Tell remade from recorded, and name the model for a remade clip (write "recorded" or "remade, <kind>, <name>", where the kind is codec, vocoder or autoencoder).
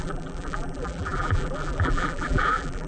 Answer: remade, vocoder, BigVGAN v2